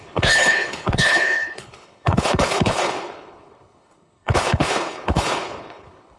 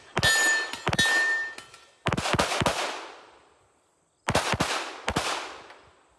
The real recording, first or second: second